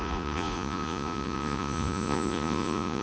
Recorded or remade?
remade